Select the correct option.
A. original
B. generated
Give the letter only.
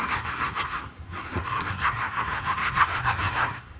B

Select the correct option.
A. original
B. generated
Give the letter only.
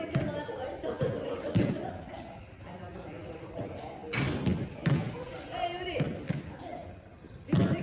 A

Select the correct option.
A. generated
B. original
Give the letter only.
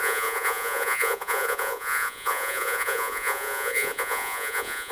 A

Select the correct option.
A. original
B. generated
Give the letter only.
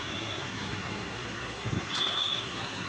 B